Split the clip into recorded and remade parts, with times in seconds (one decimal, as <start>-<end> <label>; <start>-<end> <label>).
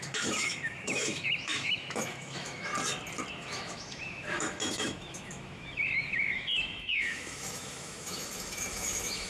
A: 0.0-2.7 remade; 2.7-3.3 recorded; 3.3-9.3 remade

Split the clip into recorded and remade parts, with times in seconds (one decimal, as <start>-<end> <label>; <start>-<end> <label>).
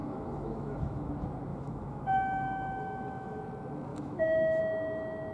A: 0.0-1.1 remade; 1.1-1.5 recorded; 1.5-3.4 remade; 3.4-3.9 recorded; 3.9-4.6 remade; 4.6-5.3 recorded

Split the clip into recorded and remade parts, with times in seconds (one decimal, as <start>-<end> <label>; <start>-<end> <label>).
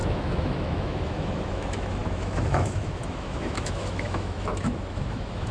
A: 0.0-5.5 remade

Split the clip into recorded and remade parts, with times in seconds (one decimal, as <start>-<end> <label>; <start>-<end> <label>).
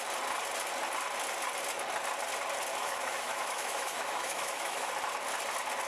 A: 0.0-2.7 recorded; 2.7-4.9 remade; 4.9-5.9 recorded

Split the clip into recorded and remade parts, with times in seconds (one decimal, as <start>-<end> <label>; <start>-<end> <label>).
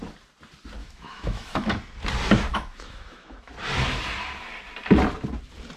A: 0.0-0.8 recorded; 0.8-1.7 remade; 1.7-2.5 recorded; 2.5-3.5 remade; 3.5-5.8 recorded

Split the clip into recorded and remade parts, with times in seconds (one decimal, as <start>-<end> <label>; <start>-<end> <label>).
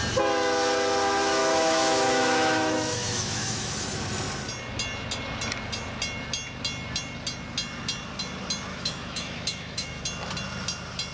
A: 0.0-1.4 recorded; 1.4-3.8 remade; 3.8-8.7 recorded; 8.7-10.0 remade; 10.0-11.1 recorded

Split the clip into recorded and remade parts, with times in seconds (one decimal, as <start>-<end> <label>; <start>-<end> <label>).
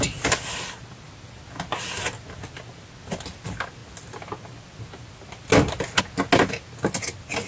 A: 0.0-7.5 recorded